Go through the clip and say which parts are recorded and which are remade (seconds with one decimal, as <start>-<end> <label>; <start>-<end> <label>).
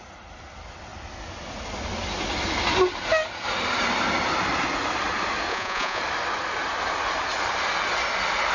0.0-5.5 recorded; 5.5-6.0 remade; 6.0-8.5 recorded